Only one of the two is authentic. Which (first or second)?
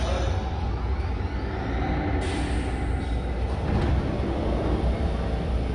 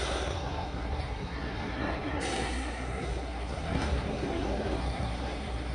first